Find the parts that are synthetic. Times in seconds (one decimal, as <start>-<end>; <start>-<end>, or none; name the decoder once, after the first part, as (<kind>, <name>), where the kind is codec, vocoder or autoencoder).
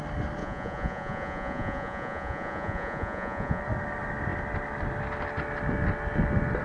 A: 0.4-3.6 (vocoder, Vocos)